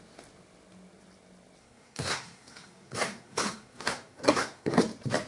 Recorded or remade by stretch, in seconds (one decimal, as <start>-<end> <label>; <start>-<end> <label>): 0.0-1.6 recorded; 1.6-4.8 remade; 4.8-5.3 recorded